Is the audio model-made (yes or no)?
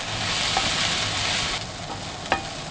no